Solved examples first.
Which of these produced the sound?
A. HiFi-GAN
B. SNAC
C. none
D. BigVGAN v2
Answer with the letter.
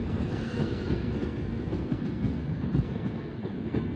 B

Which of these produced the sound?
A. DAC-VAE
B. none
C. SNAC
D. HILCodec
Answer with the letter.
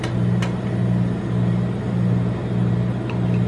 B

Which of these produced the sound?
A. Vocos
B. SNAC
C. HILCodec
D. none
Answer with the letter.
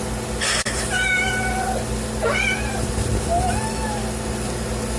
D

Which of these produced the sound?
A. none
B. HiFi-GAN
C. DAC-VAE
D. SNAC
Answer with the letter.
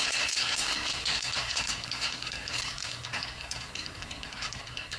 D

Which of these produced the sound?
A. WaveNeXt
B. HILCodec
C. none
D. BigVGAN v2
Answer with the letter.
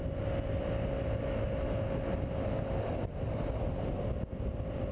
C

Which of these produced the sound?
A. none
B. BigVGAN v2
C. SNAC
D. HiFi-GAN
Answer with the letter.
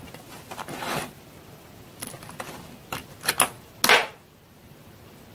A